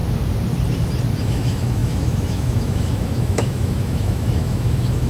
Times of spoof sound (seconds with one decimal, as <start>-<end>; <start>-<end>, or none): 1.2-5.1